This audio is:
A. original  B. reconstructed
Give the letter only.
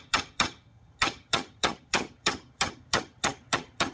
B